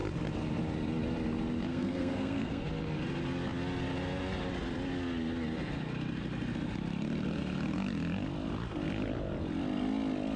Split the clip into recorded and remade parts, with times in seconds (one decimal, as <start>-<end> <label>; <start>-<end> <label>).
0.0-1.7 recorded; 1.7-2.7 remade; 2.7-10.4 recorded